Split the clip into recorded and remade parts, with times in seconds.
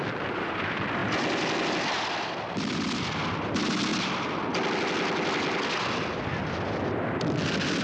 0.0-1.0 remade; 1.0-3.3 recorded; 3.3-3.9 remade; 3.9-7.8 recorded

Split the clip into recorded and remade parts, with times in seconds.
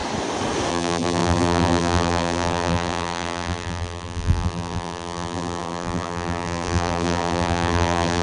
0.0-0.7 recorded; 0.7-8.2 remade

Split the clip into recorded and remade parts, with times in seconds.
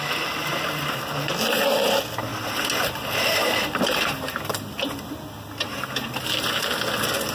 0.0-7.3 recorded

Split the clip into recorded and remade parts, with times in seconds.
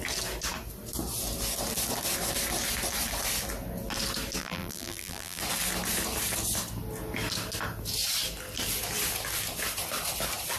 0.0-4.4 recorded; 4.4-5.4 remade; 5.4-10.6 recorded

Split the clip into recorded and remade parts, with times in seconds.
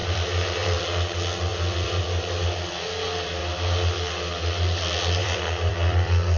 0.0-0.8 remade; 0.8-1.5 recorded; 1.5-2.0 remade; 2.0-5.2 recorded; 5.2-6.4 remade